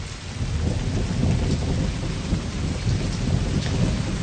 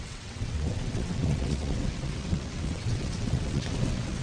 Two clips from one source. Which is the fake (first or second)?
second